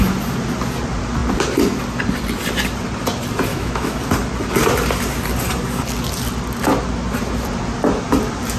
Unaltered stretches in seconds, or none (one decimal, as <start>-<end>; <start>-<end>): 0.0-3.5; 4.0-8.6